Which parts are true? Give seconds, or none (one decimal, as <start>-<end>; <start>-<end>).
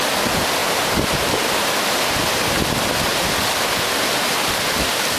0.0-0.6; 1.5-5.2